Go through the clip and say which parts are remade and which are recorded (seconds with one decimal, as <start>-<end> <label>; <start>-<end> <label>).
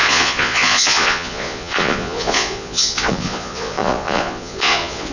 0.0-5.1 remade